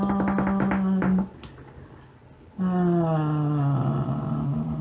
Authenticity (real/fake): real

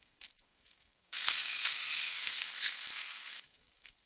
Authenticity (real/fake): fake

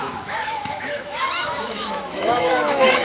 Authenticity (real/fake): fake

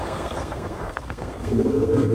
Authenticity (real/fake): fake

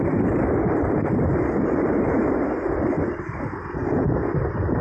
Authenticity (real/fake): real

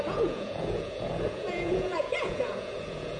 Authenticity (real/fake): fake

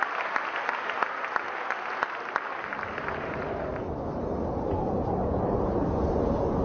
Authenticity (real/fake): real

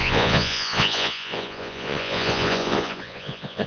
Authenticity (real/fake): fake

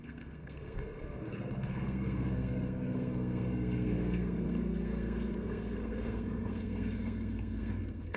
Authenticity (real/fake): fake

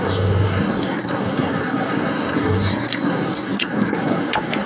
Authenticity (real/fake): fake